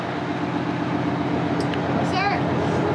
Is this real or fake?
real